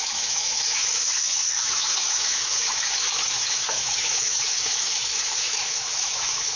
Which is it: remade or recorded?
remade